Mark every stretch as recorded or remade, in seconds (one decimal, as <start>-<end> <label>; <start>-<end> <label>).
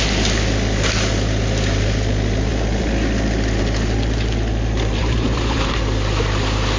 0.0-5.0 recorded; 5.0-5.8 remade; 5.8-6.8 recorded